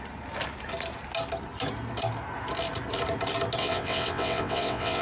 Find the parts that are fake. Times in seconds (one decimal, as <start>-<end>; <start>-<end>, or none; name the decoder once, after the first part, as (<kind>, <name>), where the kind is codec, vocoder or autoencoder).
3.6-5.0 (vocoder, WaveNeXt)